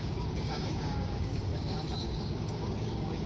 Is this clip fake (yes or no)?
yes